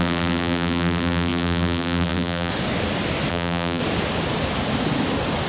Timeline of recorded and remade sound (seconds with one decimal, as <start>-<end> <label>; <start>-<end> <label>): 0.0-2.5 remade; 2.5-3.3 recorded; 3.3-3.8 remade; 3.8-5.5 recorded